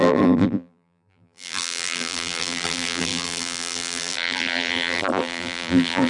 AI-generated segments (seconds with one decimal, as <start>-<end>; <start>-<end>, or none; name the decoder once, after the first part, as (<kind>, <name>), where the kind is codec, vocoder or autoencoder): 0.0-6.1 (vocoder, BigVGAN v2)